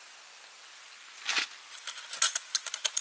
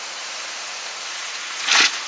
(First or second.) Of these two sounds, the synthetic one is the second